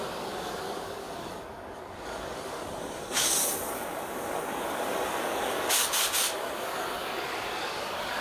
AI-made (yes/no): yes